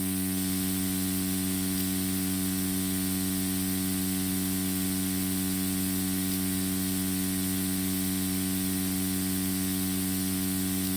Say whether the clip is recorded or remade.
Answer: recorded